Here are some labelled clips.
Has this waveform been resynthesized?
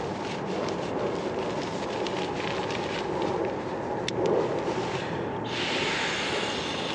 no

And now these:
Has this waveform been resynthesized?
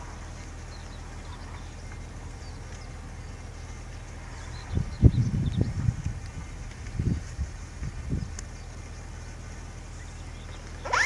no